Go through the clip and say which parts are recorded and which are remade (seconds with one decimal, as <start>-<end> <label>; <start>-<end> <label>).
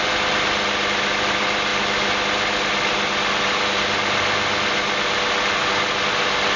0.0-6.6 recorded